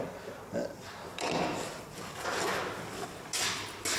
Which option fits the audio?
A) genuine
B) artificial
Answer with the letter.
A